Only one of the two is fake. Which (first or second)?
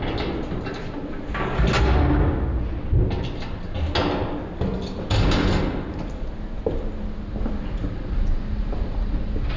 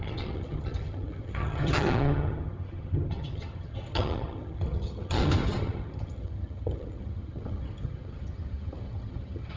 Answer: second